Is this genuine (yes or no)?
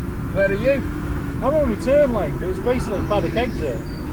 no